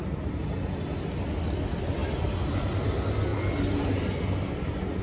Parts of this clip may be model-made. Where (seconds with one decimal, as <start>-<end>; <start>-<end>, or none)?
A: none